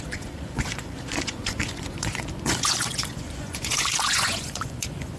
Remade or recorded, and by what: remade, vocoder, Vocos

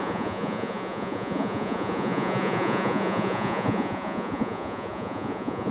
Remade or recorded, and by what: remade, vocoder, Vocos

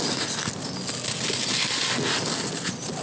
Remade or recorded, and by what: recorded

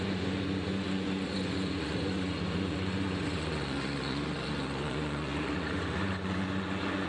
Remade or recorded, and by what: remade, vocoder, Vocos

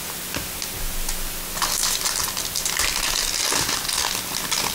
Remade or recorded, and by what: recorded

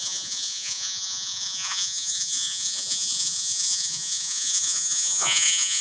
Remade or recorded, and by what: remade, vocoder, Vocos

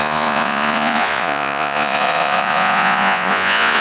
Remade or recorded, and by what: remade, vocoder, Vocos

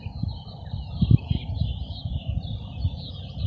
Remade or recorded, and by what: recorded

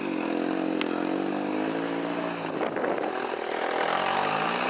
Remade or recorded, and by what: recorded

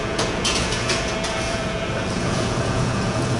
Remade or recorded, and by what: remade, vocoder, Vocos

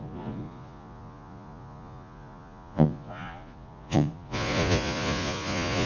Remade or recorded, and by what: remade, vocoder, Vocos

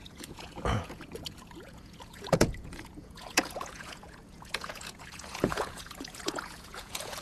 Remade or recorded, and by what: remade, vocoder, Vocos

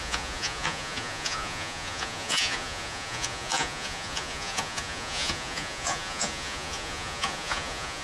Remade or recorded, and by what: remade, vocoder, Vocos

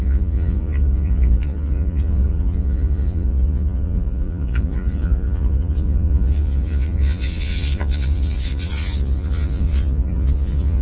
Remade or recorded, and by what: remade, vocoder, Vocos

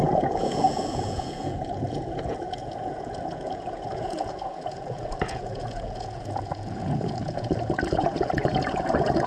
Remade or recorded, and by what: remade, vocoder, Vocos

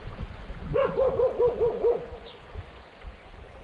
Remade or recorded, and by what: remade, vocoder, Vocos